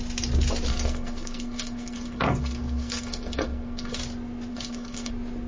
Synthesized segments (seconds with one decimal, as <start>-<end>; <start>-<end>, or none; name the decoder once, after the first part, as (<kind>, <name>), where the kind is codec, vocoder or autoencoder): 0.7-4.0 (codec, SNAC); 4.5-5.1